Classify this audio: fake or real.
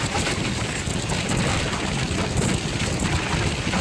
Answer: real